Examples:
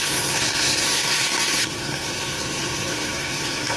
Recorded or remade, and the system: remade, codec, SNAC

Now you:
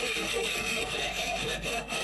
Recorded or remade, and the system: remade, codec, SNAC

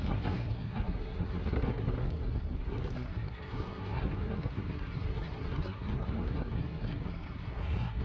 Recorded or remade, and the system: remade, codec, SNAC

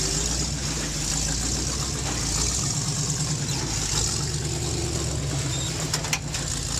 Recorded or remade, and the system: recorded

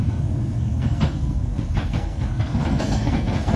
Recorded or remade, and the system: remade, codec, SNAC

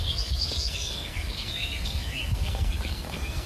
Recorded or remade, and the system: remade, codec, SNAC